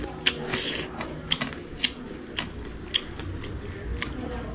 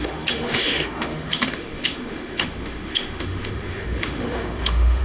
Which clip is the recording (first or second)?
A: first